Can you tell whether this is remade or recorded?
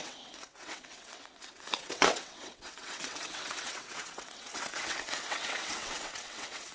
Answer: remade